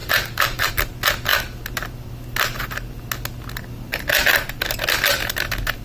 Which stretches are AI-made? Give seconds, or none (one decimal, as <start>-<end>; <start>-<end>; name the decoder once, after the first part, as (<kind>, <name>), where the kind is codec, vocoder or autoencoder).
0.0-0.7 (vocoder, BigVGAN v2)